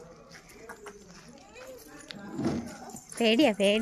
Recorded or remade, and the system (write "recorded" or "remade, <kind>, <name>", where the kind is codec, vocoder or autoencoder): recorded